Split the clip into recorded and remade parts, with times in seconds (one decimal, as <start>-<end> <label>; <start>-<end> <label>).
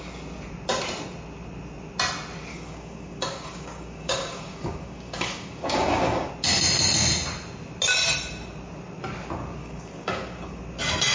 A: 0.0-2.5 recorded; 2.5-6.3 remade; 6.3-9.6 recorded; 9.6-10.6 remade; 10.6-11.1 recorded